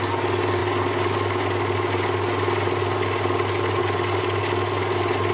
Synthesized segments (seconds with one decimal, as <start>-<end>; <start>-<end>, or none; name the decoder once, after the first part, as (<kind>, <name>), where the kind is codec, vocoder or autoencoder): none